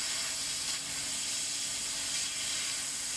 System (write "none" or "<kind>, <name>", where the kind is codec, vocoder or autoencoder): none